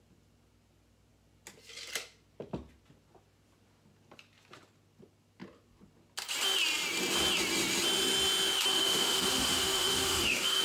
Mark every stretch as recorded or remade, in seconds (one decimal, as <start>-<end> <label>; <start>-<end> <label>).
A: 0.0-8.7 recorded; 8.7-10.6 remade